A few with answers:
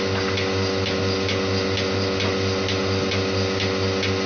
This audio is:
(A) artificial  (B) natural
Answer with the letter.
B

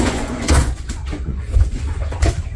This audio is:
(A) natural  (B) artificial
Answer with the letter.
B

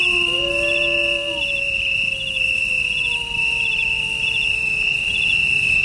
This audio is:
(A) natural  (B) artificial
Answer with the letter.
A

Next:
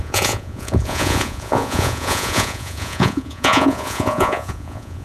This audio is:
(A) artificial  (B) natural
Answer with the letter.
A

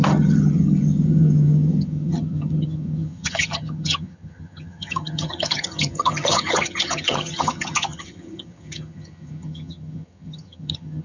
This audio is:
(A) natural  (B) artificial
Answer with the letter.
B